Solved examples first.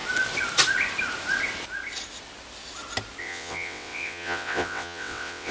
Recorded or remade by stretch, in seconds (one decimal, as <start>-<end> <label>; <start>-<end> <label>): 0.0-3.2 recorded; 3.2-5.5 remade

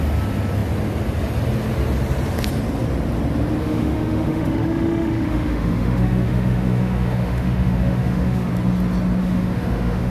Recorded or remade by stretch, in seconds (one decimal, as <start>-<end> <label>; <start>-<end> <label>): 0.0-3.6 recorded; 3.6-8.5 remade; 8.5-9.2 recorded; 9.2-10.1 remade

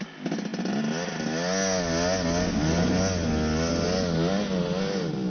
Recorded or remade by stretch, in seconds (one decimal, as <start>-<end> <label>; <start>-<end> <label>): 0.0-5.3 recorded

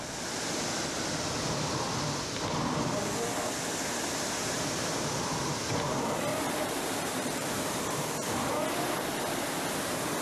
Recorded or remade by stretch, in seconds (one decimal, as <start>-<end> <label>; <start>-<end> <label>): 0.0-4.4 recorded; 4.4-5.6 remade; 5.6-6.3 recorded; 6.3-8.5 remade; 8.5-10.2 recorded

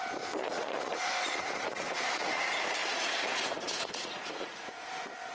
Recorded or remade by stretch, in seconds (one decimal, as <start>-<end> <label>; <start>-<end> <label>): 0.0-0.4 recorded; 0.4-2.4 remade; 2.4-2.8 recorded; 2.8-4.6 remade; 4.6-5.3 recorded

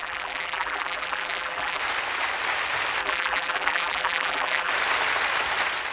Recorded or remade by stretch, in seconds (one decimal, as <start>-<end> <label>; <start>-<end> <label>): 0.0-1.8 remade; 1.8-3.0 recorded; 3.0-4.7 remade; 4.7-5.9 recorded

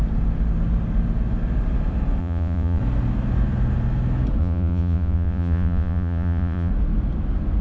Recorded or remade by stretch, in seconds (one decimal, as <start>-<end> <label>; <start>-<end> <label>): 0.0-2.2 recorded; 2.2-2.8 remade; 2.8-4.4 recorded; 4.4-6.7 remade; 6.7-7.6 recorded

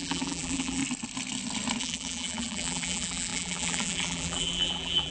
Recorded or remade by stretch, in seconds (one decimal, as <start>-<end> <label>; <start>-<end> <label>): 0.0-0.8 remade; 0.8-1.8 recorded; 1.8-5.1 remade